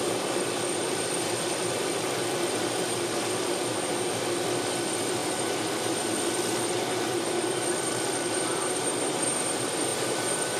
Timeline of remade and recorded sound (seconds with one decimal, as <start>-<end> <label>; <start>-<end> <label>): 0.0-3.6 remade; 3.6-4.2 recorded; 4.2-5.2 remade; 5.2-6.0 recorded; 6.0-10.6 remade